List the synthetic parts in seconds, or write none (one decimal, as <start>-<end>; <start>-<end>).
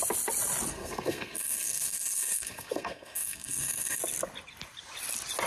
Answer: 0.7-4.0